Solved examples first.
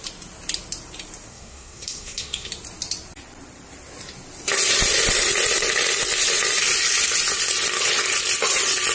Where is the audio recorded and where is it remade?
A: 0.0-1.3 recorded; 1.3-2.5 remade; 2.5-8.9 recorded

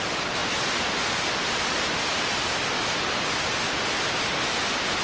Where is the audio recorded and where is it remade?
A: 0.0-5.0 recorded